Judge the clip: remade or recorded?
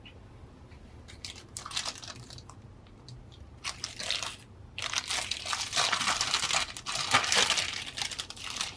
recorded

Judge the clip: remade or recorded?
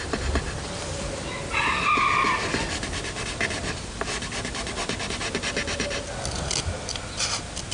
recorded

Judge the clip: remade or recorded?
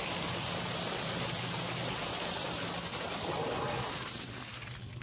recorded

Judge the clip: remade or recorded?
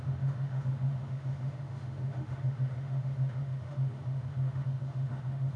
remade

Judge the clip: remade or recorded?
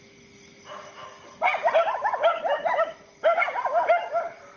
recorded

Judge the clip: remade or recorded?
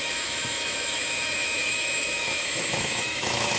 remade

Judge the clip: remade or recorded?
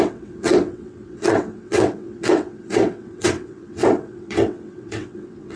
remade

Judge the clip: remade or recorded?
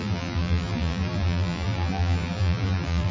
remade